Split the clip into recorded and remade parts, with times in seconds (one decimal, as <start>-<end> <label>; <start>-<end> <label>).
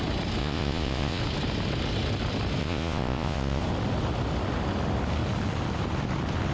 0.0-0.4 recorded; 0.4-1.2 remade; 1.2-2.6 recorded; 2.6-3.6 remade; 3.6-6.5 recorded